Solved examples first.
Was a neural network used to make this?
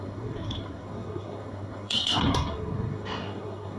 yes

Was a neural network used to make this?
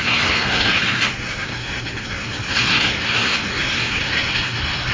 yes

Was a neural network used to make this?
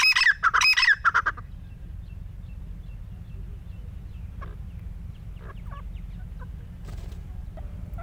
no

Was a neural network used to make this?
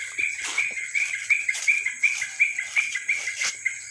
no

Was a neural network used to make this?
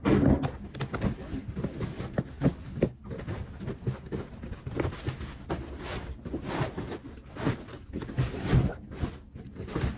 no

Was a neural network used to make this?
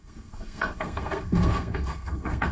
yes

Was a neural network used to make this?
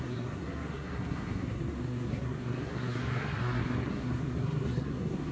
yes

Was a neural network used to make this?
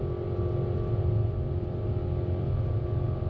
no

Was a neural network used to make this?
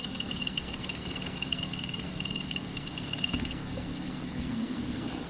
yes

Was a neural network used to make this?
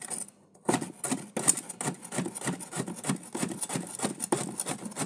no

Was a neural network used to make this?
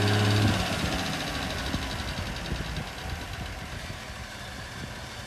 no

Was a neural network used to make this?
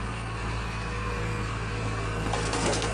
yes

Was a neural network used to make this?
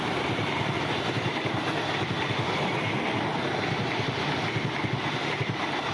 no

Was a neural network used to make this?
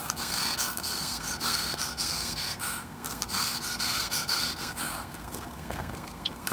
yes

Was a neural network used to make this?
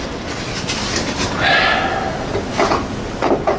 no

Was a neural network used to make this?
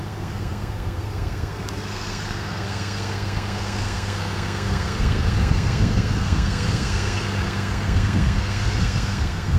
yes